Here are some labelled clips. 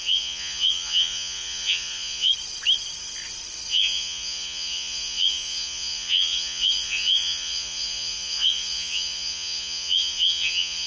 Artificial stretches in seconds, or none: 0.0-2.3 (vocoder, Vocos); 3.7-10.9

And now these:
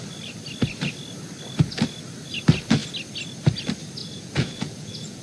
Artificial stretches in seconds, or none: 4.0-5.2 (vocoder, Vocos)